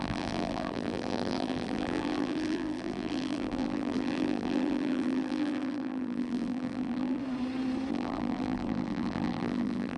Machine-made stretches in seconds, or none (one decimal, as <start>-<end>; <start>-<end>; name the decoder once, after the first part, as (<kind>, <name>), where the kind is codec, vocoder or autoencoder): 0.0-7.2 (vocoder, BigVGAN v2); 7.9-10.0